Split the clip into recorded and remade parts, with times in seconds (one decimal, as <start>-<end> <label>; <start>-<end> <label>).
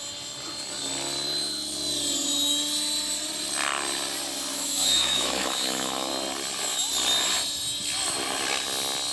0.0-4.5 recorded; 4.5-6.1 remade; 6.1-9.1 recorded